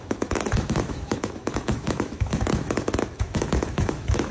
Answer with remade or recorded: remade